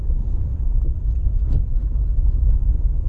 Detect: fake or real real